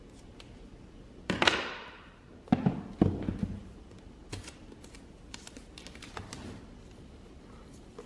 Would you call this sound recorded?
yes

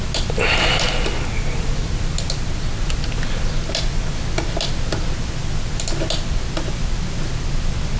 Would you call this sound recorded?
yes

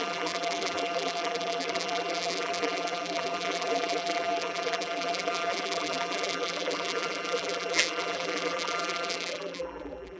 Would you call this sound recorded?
no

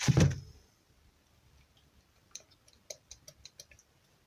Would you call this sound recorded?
yes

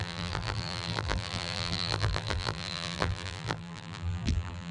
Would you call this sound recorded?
no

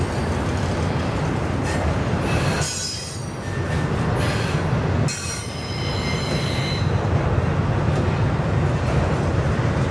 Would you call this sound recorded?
yes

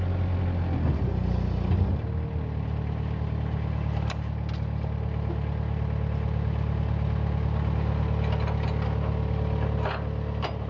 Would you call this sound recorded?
yes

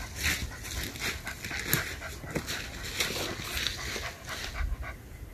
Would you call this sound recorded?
yes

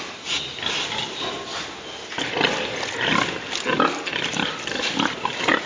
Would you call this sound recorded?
yes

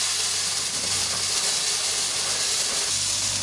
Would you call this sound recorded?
yes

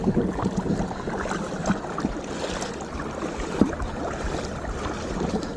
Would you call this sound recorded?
yes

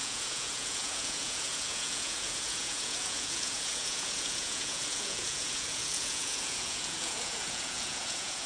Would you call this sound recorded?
no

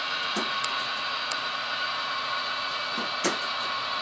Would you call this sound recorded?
no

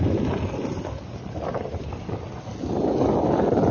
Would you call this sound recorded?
yes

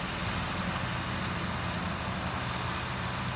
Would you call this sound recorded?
yes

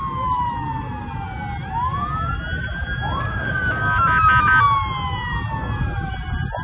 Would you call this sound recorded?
yes